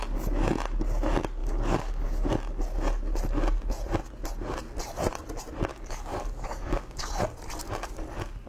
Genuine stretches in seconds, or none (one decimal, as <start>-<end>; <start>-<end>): 0.0-1.4; 2.3-5.7; 7.1-8.5